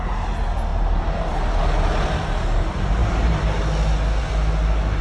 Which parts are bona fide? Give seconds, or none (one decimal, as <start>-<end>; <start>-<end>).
0.0-0.7; 1.6-3.0; 3.6-5.0